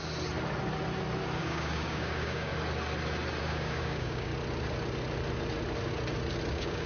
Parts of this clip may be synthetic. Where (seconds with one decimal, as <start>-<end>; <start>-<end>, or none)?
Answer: 1.4-2.5; 3.4-4.3; 6.5-6.9

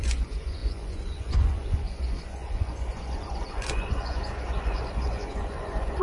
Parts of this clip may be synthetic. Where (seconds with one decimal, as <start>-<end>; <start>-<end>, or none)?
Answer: 0.0-6.0

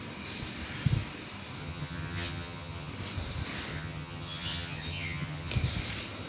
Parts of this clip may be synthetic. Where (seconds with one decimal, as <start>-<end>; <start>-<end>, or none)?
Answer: 1.6-2.9; 3.7-5.5

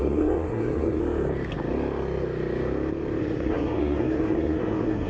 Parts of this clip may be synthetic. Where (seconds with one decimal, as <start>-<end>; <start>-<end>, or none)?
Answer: 0.0-1.0; 3.2-5.1